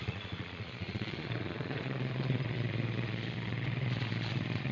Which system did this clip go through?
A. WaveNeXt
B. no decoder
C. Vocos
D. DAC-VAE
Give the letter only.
C